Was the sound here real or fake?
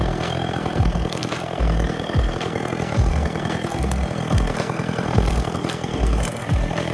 fake